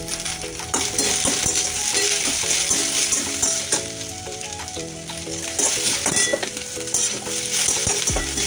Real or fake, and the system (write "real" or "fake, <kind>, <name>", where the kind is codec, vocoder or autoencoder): fake, vocoder, BigVGAN v2